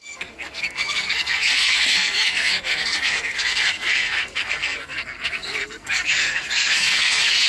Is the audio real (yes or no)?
no